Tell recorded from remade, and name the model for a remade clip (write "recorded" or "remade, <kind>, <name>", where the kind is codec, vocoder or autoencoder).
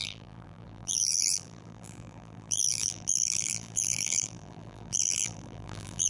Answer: remade, vocoder, BigVGAN v2